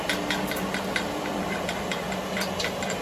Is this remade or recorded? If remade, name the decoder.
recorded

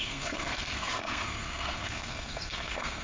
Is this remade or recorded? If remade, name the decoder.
remade, codec, SNAC